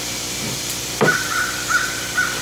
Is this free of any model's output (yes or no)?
yes